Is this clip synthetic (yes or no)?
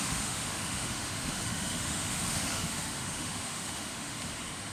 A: yes